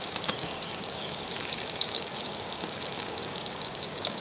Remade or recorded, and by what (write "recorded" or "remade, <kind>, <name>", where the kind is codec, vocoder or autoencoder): remade, codec, DAC